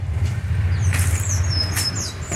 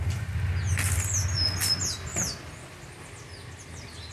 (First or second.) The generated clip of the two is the first